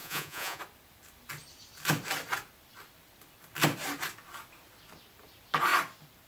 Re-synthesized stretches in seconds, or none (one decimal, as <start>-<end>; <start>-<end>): 0.0-0.6